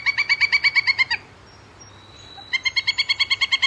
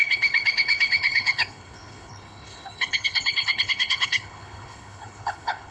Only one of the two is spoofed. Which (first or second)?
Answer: second